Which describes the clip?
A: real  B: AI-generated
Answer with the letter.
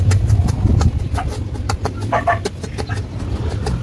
A